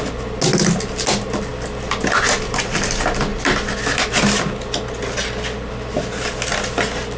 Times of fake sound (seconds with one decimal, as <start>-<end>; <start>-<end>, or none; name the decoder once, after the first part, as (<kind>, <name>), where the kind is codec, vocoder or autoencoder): none